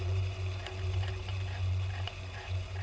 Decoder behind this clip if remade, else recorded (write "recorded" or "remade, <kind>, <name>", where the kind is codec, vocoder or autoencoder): remade, vocoder, Vocos